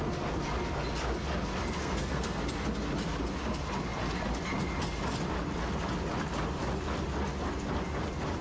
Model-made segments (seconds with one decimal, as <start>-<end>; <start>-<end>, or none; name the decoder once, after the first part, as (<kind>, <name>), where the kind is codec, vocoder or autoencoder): 1.8-2.4 (codec, SNAC)